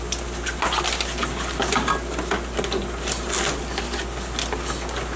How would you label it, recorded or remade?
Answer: recorded